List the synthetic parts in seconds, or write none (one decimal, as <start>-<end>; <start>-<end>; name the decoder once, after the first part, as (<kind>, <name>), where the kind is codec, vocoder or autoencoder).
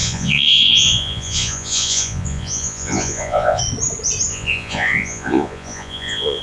0.0-3.6 (vocoder, Vocos); 4.3-6.4